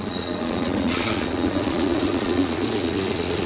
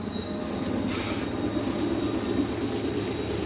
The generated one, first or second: first